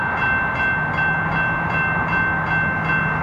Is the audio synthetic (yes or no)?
no